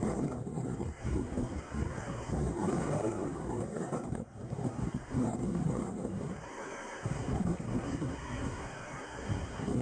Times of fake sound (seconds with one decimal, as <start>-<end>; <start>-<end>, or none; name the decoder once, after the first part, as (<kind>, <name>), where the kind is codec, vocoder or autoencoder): 0.0-9.8 (codec, SNAC)